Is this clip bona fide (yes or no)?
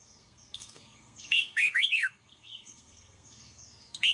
no